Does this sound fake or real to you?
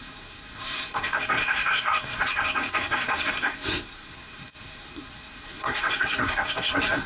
fake